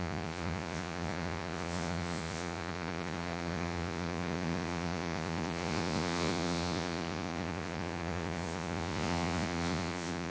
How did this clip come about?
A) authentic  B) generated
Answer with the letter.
B